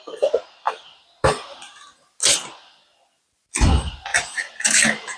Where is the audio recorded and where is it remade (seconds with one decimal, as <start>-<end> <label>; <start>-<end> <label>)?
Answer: 0.0-4.1 recorded; 4.1-5.2 remade